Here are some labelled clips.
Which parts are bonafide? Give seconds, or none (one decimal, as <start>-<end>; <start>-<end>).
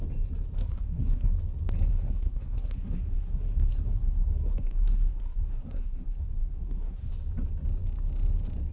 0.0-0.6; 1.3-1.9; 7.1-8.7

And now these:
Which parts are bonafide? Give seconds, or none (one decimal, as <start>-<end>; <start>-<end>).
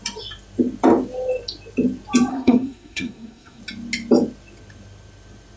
0.0-2.3; 3.6-5.6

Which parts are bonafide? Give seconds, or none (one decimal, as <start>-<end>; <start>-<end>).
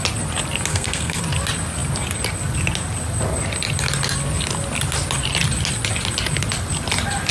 0.0-0.7; 1.2-7.3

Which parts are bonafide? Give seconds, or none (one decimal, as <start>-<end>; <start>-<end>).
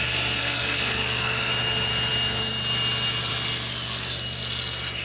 0.0-0.4; 1.5-5.0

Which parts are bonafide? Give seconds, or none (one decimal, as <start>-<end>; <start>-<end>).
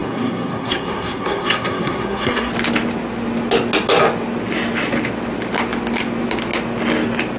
2.5-7.4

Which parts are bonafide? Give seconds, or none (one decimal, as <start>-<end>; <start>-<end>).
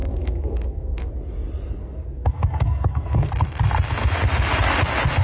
1.1-1.8; 3.3-5.2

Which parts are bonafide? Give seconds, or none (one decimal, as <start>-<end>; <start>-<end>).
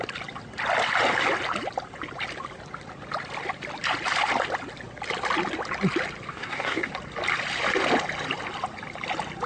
0.0-6.3; 6.9-9.5